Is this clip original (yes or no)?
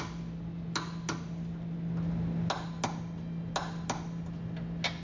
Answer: yes